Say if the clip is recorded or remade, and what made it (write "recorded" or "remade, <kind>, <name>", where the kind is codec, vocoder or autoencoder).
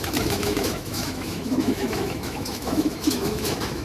remade, autoencoder, DAC-VAE